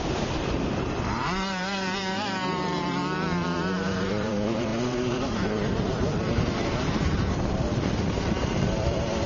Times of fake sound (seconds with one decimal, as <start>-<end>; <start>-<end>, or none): 0.0-3.0; 4.0-9.3